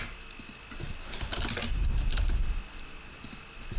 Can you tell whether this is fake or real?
real